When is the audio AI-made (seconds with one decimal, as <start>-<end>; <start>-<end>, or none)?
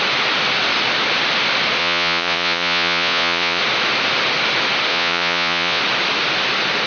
1.8-3.6; 4.9-5.8